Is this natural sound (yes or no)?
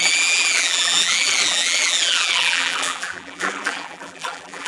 no